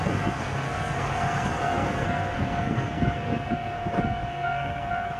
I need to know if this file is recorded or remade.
remade